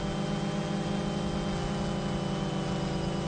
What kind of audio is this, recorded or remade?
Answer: recorded